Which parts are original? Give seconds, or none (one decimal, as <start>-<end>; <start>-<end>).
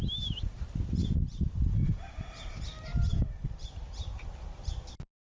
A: 0.0-1.0; 2.3-2.9; 4.7-5.2